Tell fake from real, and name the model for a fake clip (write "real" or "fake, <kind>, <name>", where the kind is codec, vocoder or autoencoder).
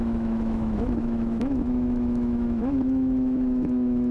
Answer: fake, autoencoder, DAC-VAE